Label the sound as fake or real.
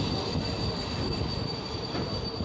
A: real